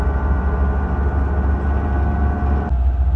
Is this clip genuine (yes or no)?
yes